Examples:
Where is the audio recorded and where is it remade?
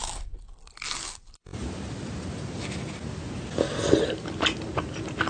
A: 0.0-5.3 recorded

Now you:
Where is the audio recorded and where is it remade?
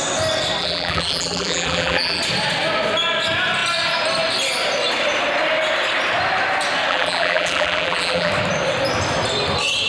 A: 0.0-0.6 recorded; 0.6-2.2 remade; 2.2-6.9 recorded; 6.9-8.3 remade; 8.3-9.9 recorded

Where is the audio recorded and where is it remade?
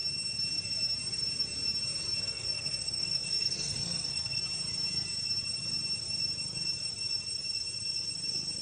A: 0.0-2.2 recorded; 2.2-4.4 remade; 4.4-8.6 recorded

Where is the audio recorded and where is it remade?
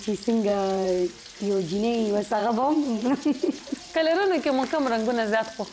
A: 0.0-0.5 recorded; 0.5-1.6 remade; 1.6-2.4 recorded; 2.4-3.9 remade; 3.9-5.7 recorded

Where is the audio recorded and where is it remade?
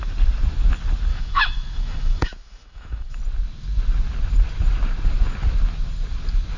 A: 0.0-1.1 recorded; 1.1-3.2 remade; 3.2-6.6 recorded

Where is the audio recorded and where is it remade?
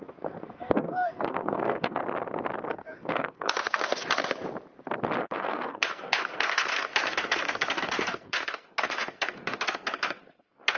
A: 0.0-2.0 remade; 2.0-2.7 recorded; 2.7-3.9 remade; 3.9-5.2 recorded; 5.2-10.8 remade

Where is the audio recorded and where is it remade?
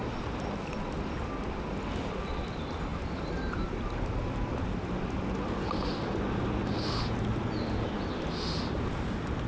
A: 0.0-9.5 recorded